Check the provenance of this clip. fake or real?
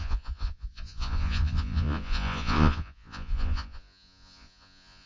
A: fake